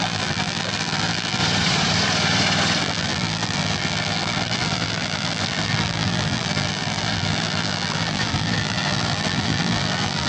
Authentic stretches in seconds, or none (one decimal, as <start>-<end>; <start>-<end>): 1.4-2.8